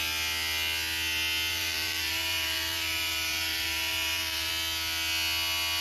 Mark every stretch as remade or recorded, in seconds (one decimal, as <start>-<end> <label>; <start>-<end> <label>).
0.0-1.5 recorded; 1.5-4.5 remade; 4.5-5.8 recorded